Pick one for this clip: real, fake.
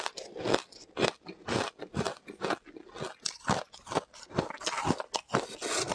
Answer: real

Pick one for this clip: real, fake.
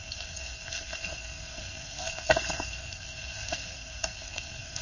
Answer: fake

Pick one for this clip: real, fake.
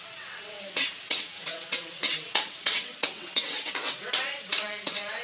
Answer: fake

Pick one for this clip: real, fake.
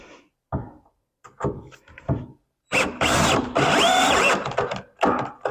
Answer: real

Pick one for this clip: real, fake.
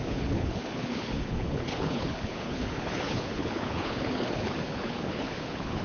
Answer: fake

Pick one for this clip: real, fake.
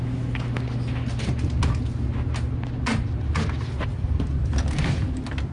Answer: real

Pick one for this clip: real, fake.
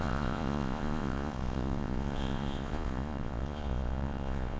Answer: fake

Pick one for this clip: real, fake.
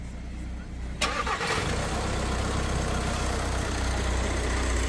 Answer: real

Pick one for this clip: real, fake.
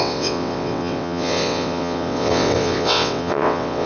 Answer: fake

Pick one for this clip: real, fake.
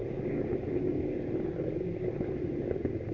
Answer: real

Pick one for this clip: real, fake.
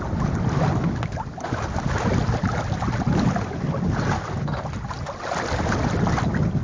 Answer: real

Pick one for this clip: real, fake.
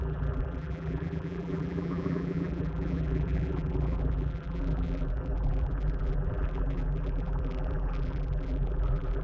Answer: fake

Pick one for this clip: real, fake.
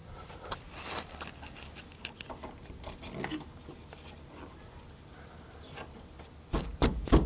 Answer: real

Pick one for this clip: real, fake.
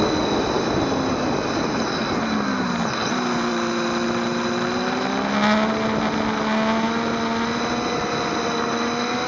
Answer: real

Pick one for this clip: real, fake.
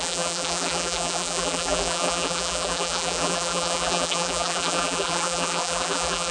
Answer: fake